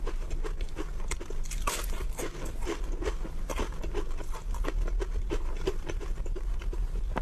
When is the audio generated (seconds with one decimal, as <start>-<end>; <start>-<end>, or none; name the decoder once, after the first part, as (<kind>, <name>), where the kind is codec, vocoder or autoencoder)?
0.0-0.9 (vocoder, BigVGAN v2); 5.2-7.2